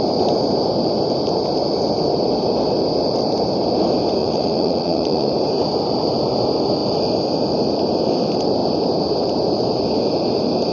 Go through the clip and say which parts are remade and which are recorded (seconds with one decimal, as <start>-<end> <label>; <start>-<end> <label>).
0.0-4.2 recorded; 4.2-5.3 remade; 5.3-10.7 recorded